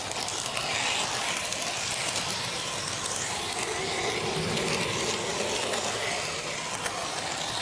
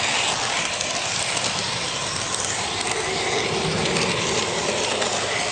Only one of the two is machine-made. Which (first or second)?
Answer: second